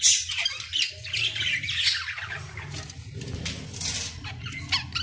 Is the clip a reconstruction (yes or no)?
no